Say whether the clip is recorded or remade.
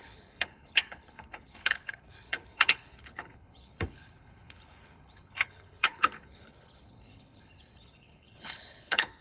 remade